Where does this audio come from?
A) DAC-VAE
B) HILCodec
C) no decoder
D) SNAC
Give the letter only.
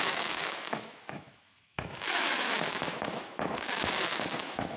A